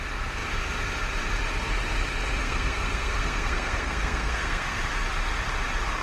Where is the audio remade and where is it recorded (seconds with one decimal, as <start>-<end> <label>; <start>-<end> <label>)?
0.0-2.4 recorded; 2.4-4.9 remade; 4.9-6.0 recorded